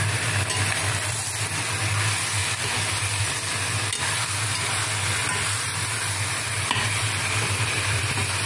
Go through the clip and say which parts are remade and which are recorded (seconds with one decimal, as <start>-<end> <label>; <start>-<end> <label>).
0.0-2.4 recorded; 2.4-3.2 remade; 3.2-5.2 recorded; 5.2-8.0 remade; 8.0-8.5 recorded